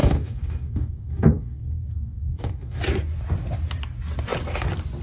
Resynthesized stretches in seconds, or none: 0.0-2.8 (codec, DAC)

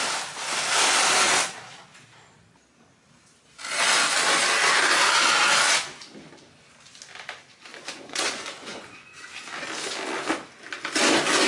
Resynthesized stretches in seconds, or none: 7.7-9.3 (vocoder, Vocos)

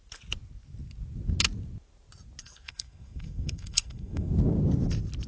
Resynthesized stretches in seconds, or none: 2.4-4.3 (codec, SNAC)

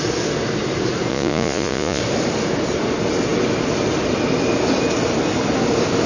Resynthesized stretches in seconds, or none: 1.1-2.0 (vocoder, Vocos)

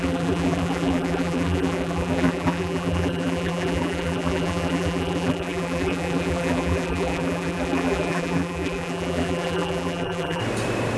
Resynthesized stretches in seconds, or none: 0.0-10.4 (vocoder, BigVGAN v2)

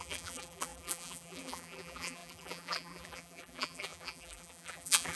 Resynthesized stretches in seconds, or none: 0.0-5.2 (vocoder, BigVGAN v2)